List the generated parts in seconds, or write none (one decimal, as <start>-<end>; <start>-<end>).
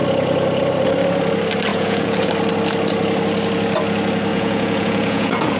1.7-2.3; 4.3-5.6